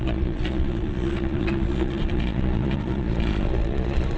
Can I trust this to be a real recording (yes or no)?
no